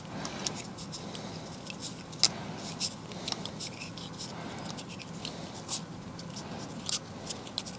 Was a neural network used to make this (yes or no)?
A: no